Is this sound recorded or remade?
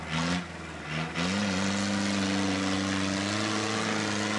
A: recorded